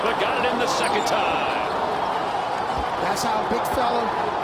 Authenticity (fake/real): real